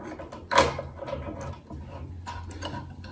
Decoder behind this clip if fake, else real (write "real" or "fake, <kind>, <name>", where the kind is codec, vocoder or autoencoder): real